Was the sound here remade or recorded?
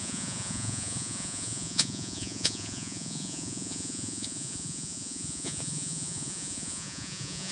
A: remade